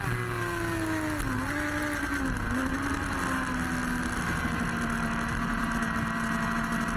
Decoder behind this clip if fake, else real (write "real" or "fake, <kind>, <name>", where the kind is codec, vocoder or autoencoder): real